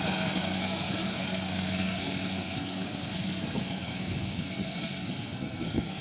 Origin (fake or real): fake